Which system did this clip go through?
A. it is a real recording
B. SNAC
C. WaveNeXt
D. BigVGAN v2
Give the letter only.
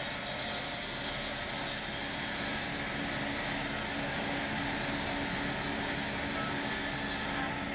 A